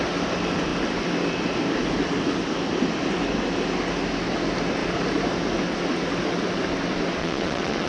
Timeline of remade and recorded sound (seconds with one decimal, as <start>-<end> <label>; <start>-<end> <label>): 0.0-7.2 recorded; 7.2-7.9 remade